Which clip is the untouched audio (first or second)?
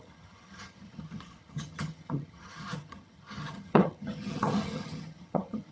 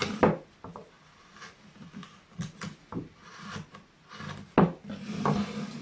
second